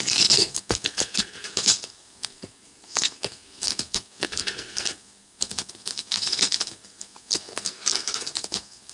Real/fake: fake